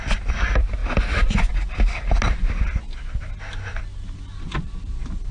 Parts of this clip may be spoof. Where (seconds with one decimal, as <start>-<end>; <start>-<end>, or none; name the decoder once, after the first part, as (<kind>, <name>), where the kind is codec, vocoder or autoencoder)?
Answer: none